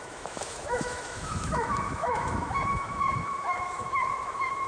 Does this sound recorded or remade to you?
remade